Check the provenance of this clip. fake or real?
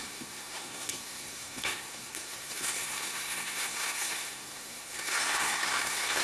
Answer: fake